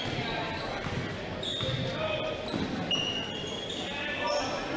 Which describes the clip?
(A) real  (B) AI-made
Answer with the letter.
A